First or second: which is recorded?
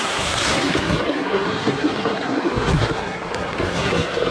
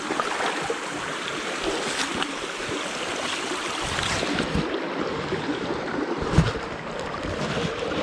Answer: second